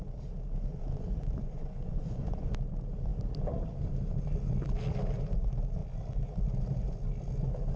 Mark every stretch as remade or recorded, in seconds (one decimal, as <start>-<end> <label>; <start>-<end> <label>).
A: 0.0-1.4 recorded; 1.4-2.5 remade; 2.5-7.8 recorded